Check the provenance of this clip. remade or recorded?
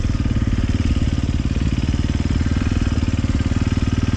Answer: recorded